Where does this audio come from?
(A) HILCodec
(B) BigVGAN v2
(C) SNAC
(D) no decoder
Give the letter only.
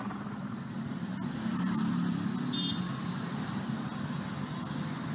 D